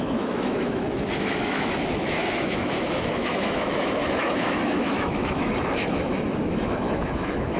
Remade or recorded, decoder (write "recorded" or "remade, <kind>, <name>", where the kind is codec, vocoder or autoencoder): remade, autoencoder, DAC-VAE